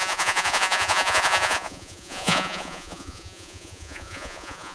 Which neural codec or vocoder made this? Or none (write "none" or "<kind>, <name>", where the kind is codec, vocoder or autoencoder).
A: vocoder, Vocos